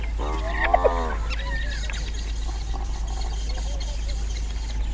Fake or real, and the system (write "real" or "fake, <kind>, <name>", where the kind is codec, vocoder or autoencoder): real